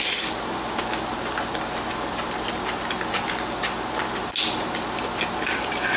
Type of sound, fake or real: real